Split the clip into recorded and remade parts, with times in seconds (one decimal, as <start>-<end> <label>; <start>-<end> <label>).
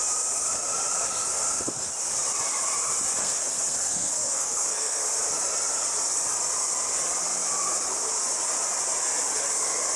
0.0-1.3 recorded; 1.3-1.9 remade; 1.9-3.2 recorded; 3.2-5.0 remade; 5.0-10.0 recorded